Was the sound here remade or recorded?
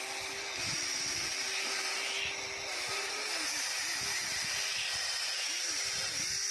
recorded